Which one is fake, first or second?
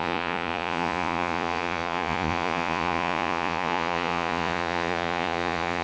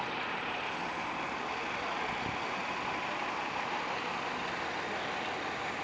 first